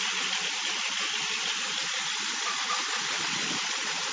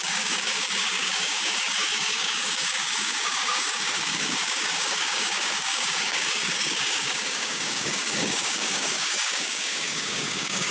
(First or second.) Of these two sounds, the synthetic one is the second